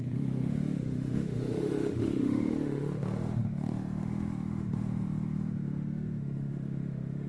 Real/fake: fake